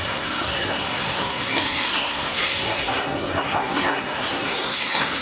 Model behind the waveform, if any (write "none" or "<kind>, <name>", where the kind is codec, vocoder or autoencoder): codec, SNAC